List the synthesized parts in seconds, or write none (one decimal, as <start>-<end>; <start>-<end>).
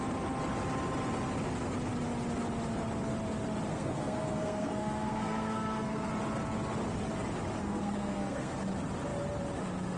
3.7-6.1; 7.6-8.5